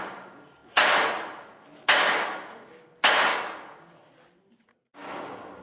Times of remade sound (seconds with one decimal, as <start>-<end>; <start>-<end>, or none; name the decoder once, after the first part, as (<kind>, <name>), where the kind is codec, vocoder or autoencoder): 5.0-5.6 (codec, DAC)